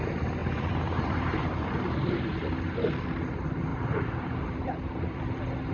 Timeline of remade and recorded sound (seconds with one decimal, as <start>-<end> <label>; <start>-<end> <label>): 0.0-0.4 recorded; 0.4-2.2 remade; 2.2-3.7 recorded; 3.7-4.6 remade; 4.6-5.7 recorded